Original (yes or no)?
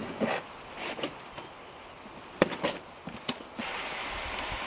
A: yes